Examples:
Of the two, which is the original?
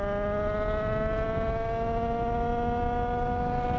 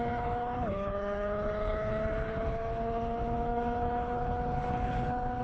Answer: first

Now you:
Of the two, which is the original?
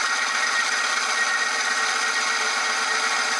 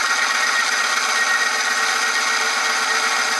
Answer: second